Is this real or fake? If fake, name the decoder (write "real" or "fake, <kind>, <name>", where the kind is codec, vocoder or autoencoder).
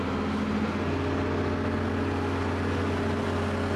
real